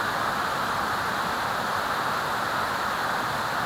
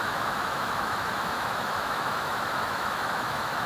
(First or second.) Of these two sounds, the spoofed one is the second